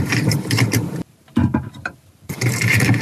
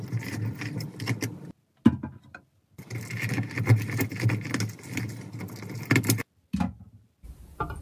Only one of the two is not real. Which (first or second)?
first